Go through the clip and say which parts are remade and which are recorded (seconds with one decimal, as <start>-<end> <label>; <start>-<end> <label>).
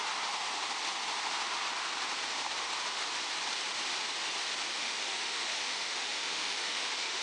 0.0-4.7 recorded; 4.7-7.2 remade